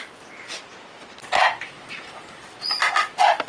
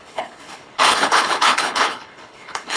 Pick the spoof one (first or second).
second